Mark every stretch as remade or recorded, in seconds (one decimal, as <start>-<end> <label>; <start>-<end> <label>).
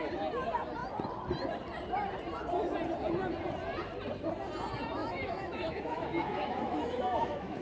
0.0-5.0 recorded; 5.0-7.6 remade